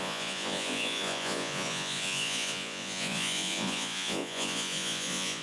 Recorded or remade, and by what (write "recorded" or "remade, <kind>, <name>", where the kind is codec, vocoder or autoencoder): remade, vocoder, Vocos